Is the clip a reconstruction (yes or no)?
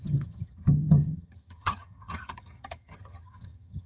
yes